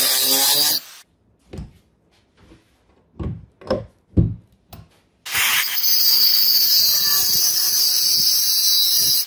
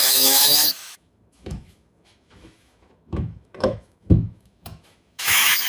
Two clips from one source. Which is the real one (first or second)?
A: first